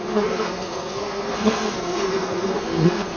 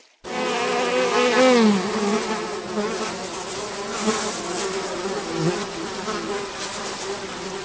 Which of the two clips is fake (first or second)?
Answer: first